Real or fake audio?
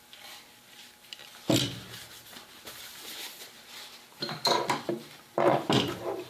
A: fake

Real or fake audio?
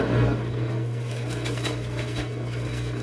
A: fake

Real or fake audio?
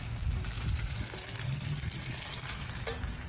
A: real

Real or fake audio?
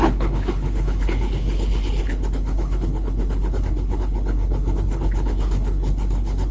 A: fake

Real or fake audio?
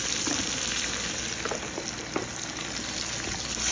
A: real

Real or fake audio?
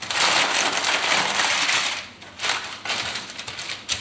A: real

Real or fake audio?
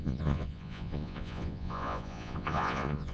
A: fake